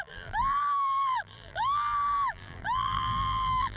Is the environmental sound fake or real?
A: fake